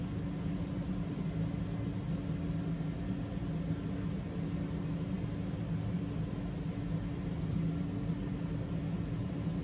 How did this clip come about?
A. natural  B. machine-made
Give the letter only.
A